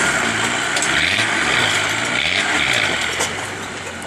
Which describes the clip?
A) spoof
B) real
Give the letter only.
A